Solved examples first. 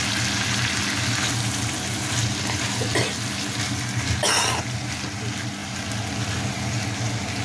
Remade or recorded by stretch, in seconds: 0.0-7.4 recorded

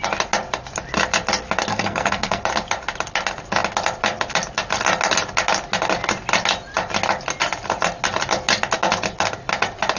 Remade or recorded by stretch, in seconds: 0.0-1.7 recorded; 1.7-2.4 remade; 2.4-10.0 recorded